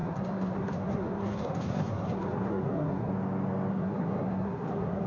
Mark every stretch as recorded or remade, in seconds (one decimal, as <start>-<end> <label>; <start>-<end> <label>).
0.0-3.1 remade; 3.1-3.7 recorded; 3.7-5.1 remade